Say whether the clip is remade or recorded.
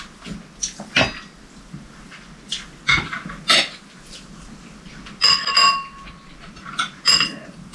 recorded